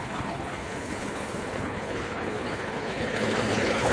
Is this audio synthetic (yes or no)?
yes